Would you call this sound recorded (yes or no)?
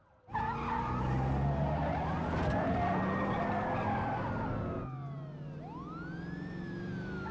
yes